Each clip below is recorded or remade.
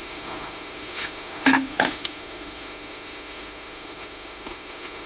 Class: remade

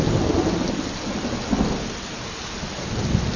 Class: recorded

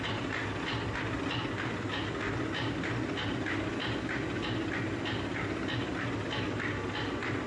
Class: recorded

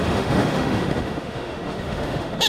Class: remade